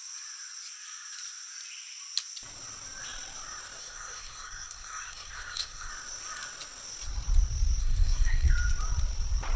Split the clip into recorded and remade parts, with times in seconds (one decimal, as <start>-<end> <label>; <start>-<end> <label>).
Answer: 0.0-3.8 recorded; 3.8-5.9 remade; 5.9-7.8 recorded; 7.8-8.5 remade; 8.5-9.6 recorded